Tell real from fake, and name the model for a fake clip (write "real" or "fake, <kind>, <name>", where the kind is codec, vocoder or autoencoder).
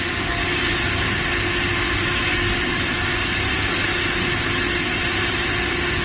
real